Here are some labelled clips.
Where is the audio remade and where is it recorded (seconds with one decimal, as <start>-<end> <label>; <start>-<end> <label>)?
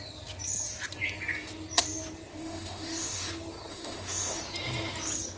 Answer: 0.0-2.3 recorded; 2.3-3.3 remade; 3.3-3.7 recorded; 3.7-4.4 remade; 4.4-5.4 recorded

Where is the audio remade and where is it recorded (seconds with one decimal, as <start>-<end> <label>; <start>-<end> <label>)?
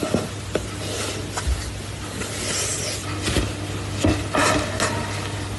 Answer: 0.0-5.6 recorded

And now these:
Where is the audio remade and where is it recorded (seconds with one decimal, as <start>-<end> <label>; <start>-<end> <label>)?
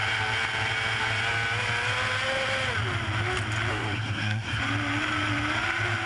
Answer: 0.0-3.7 recorded; 3.7-4.6 remade; 4.6-6.1 recorded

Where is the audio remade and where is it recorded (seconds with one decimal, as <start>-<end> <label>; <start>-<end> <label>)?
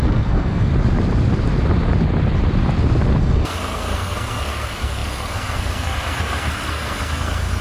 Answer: 0.0-0.7 remade; 0.7-3.2 recorded; 3.2-7.6 remade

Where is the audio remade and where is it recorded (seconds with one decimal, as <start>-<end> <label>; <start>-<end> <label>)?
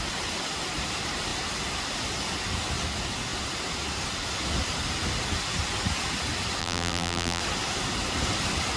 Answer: 0.0-6.6 recorded; 6.6-7.4 remade; 7.4-8.8 recorded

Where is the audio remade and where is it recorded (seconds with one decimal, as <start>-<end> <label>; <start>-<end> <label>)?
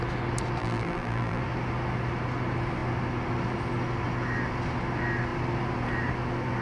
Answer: 0.0-0.6 recorded; 0.6-1.4 remade; 1.4-6.6 recorded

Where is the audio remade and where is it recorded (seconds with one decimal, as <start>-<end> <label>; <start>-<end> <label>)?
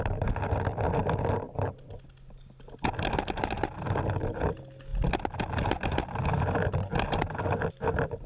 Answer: 0.0-8.3 recorded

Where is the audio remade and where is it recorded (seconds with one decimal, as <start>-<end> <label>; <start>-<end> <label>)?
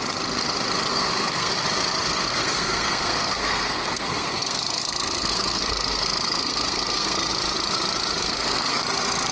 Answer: 0.0-0.9 recorded; 0.9-1.5 remade; 1.5-2.3 recorded; 2.3-7.3 remade; 7.3-8.2 recorded; 8.2-8.8 remade; 8.8-9.3 recorded